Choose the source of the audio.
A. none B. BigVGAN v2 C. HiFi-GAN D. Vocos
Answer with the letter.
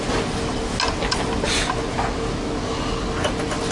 A